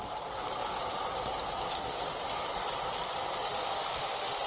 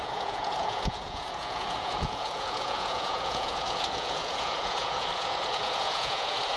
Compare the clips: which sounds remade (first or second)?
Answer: second